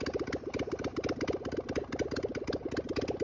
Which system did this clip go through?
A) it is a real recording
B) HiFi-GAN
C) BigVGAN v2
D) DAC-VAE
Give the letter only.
A